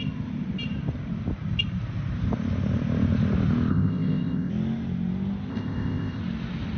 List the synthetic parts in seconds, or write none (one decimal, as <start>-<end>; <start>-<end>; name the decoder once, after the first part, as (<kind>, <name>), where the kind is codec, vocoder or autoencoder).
3.7-4.5 (codec, ZipCodec); 5.5-6.2